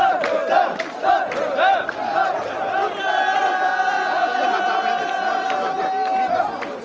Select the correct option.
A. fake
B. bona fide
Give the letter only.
B